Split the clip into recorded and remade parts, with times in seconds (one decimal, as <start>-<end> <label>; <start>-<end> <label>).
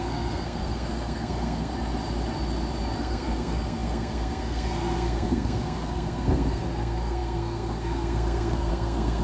0.0-1.7 remade; 1.7-3.0 recorded; 3.0-9.2 remade